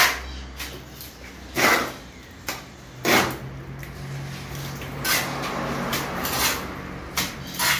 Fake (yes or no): no